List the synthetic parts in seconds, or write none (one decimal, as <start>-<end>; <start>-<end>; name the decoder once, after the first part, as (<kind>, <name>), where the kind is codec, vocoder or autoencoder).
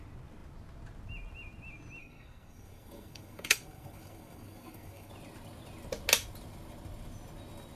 2.0-5.1 (codec, SNAC)